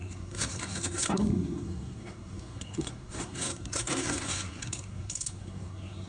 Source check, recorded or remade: remade